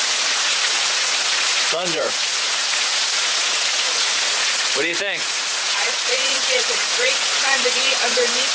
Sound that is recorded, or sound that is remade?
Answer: remade